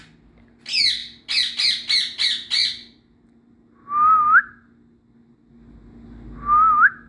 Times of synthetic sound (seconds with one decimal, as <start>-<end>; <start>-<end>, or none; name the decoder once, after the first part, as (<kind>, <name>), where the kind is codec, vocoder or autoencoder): none